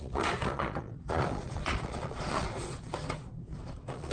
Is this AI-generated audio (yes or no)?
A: yes